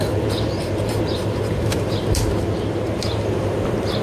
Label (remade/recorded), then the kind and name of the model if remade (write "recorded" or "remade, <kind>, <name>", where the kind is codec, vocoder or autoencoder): remade, vocoder, BigVGAN v2